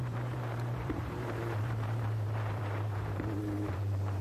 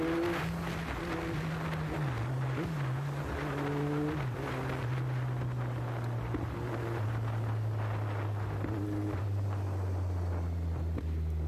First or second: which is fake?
first